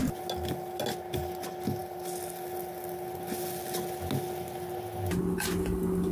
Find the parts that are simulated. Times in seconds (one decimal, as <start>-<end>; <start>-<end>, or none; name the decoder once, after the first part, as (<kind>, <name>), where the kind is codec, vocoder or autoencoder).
none

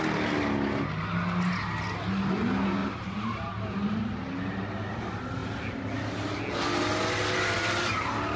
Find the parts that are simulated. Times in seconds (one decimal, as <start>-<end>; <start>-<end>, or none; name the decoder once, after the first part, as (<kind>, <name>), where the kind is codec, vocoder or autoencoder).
2.8-3.6 (vocoder, BigVGAN v2)

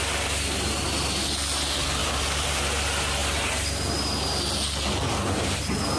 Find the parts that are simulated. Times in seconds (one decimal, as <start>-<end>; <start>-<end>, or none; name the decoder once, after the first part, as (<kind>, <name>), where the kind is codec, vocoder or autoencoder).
2.0-2.6 (vocoder, BigVGAN v2)